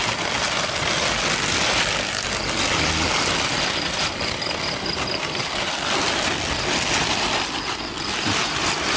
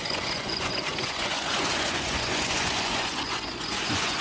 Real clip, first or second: first